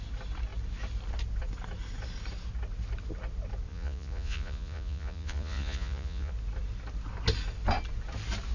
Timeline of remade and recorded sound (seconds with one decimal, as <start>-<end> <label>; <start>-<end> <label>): 0.0-3.7 recorded; 3.7-6.3 remade; 6.3-8.5 recorded